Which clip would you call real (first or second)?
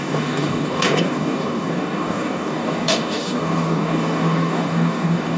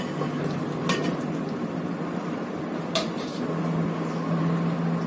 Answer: second